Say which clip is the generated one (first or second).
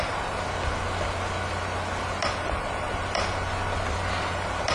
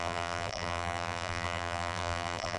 second